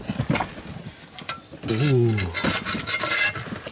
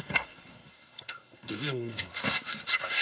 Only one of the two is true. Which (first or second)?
first